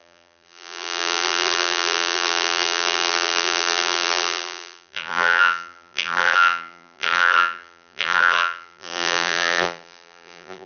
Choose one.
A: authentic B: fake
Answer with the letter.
B